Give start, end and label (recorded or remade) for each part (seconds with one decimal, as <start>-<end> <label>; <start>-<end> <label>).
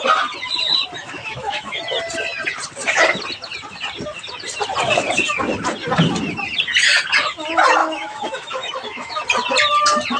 0.0-1.0 recorded; 1.0-1.7 remade; 1.7-7.8 recorded; 7.8-9.2 remade; 9.2-10.2 recorded